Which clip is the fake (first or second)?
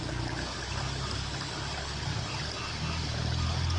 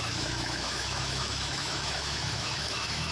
second